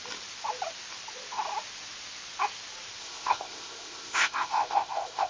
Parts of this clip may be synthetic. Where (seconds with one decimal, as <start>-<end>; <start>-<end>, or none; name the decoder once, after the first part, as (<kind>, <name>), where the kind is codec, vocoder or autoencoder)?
3.0-5.3 (codec, ZipCodec)